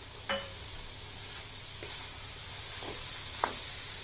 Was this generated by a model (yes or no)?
no